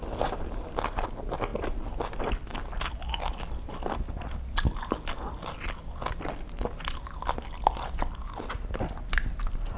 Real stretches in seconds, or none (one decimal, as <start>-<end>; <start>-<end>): 0.0-9.8